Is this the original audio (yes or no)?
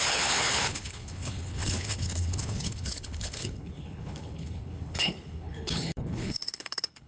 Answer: no